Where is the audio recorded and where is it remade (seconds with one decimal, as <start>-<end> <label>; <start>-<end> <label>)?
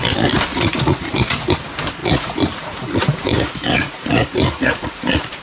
0.0-0.5 recorded; 0.5-1.5 remade; 1.5-2.0 recorded; 2.0-5.4 remade